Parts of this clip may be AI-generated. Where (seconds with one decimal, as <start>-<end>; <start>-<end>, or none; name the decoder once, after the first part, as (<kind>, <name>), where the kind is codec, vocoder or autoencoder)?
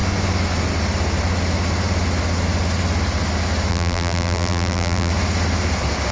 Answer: 3.7-5.1 (vocoder, BigVGAN v2)